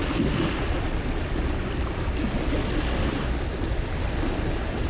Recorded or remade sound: recorded